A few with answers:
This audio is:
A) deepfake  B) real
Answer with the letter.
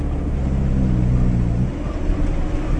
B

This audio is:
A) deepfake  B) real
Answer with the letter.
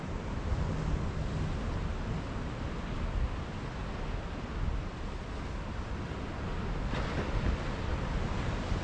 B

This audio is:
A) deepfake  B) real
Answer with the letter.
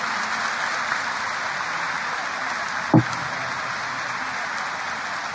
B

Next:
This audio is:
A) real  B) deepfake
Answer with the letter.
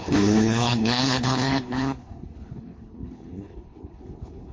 B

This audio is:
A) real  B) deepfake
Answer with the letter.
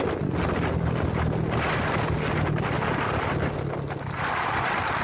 A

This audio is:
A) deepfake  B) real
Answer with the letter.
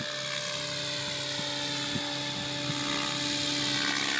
B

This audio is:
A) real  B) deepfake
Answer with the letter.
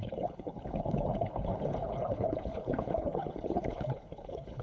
B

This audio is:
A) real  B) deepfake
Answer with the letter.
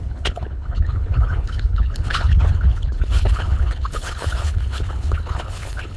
B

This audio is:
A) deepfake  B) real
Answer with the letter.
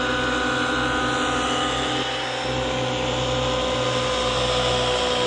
B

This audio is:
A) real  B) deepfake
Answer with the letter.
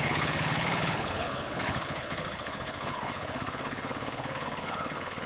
B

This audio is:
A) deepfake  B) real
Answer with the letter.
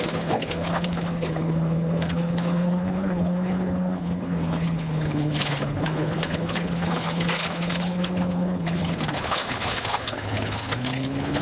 A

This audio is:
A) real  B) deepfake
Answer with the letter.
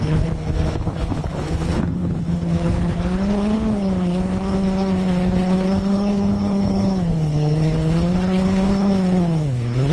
B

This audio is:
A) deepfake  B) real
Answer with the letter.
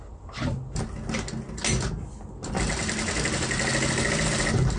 B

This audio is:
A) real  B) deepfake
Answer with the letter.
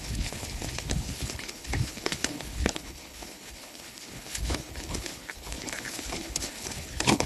B